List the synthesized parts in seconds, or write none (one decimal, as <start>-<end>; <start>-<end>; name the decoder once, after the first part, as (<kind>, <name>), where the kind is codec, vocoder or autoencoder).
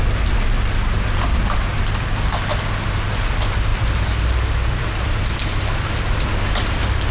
none